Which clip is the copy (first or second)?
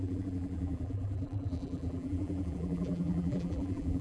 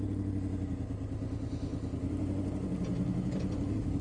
first